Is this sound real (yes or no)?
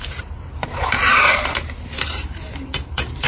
no